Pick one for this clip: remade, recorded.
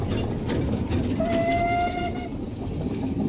recorded